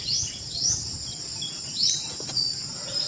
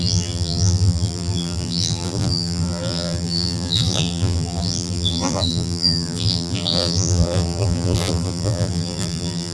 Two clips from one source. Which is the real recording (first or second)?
first